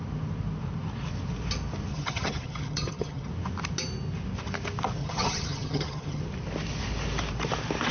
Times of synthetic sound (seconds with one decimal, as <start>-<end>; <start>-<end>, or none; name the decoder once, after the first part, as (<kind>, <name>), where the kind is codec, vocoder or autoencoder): 1.9-3.3 (vocoder, HiFi-GAN); 5.0-6.2